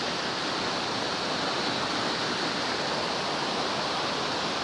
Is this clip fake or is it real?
real